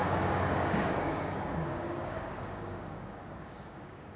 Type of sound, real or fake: fake